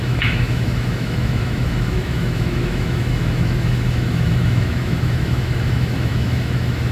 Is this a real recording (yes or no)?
no